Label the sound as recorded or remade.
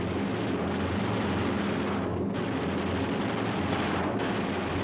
recorded